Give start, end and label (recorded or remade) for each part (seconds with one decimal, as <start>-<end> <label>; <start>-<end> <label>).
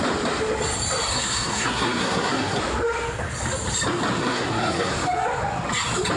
0.0-1.1 recorded; 1.1-2.6 remade; 2.6-4.2 recorded; 4.2-4.9 remade; 4.9-6.2 recorded